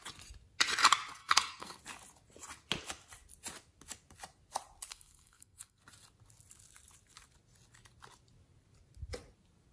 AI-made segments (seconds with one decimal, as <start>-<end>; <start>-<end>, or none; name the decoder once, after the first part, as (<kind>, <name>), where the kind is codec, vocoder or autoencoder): 1.2-1.8 (codec, SNAC); 4.9-5.8